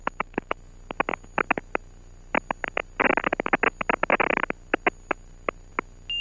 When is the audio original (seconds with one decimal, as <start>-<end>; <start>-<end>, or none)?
0.0-6.2